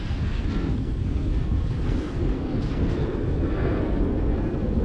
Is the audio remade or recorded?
remade